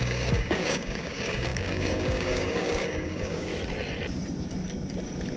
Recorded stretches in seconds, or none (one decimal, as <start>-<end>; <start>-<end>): 3.5-5.4